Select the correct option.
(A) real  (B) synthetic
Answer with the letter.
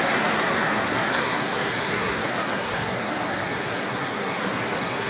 B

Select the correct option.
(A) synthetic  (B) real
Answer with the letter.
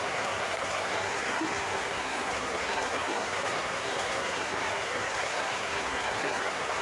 A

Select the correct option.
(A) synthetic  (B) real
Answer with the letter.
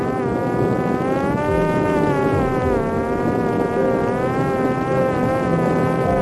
B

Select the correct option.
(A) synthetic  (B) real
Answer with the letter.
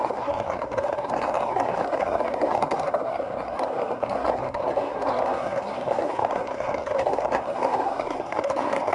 A